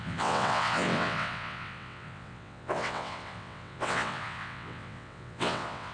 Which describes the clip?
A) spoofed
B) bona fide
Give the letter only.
A